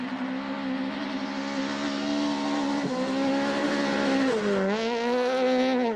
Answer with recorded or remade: recorded